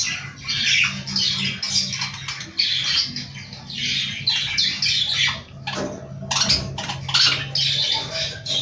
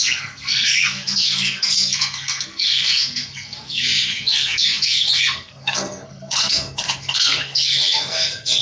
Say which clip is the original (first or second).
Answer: first